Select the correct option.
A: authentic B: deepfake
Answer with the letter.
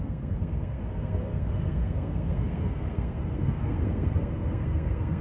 B